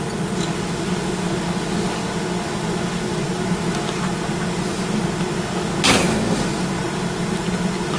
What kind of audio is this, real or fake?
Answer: real